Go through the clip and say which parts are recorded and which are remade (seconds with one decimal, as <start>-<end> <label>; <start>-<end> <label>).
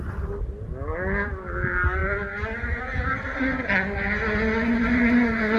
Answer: 0.0-5.6 recorded